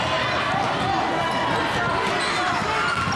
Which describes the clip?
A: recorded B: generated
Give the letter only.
A